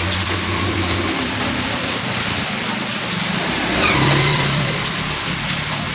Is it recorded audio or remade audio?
recorded